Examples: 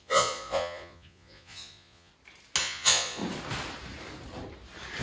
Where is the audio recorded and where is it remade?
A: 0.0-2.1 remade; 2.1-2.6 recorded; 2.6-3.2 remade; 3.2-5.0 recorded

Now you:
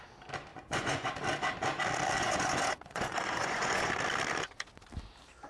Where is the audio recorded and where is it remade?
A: 0.0-0.5 recorded; 0.5-1.1 remade; 1.1-2.2 recorded; 2.2-3.9 remade; 3.9-5.5 recorded

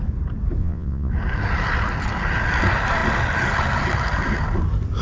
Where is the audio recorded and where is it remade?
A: 0.0-0.6 recorded; 0.6-1.1 remade; 1.1-5.0 recorded

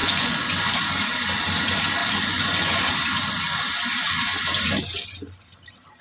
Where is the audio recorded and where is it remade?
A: 0.0-0.6 remade; 0.6-2.0 recorded; 2.0-2.9 remade; 2.9-6.0 recorded

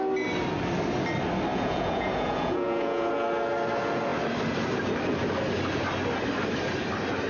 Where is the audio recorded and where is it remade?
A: 0.0-1.5 recorded; 1.5-3.1 remade; 3.1-7.3 recorded